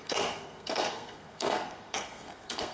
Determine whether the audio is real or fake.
fake